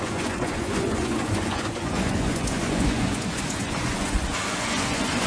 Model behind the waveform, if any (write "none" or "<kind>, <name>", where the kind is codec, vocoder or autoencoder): vocoder, Vocos